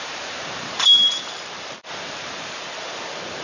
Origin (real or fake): fake